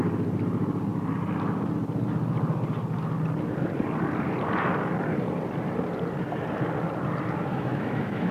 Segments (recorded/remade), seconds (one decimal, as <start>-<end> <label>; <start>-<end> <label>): 0.0-7.5 recorded; 7.5-8.3 remade